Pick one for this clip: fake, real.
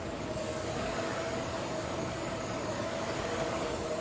fake